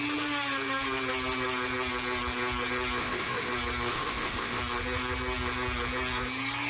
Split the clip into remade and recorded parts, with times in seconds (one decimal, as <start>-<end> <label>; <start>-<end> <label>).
0.0-3.0 recorded; 3.0-3.5 remade; 3.5-3.9 recorded; 3.9-4.6 remade; 4.6-6.7 recorded